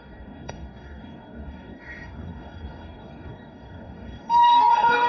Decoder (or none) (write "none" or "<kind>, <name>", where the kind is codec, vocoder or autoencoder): codec, DAC